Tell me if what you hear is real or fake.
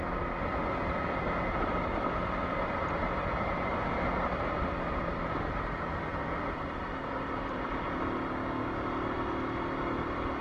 fake